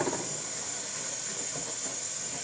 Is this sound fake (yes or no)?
no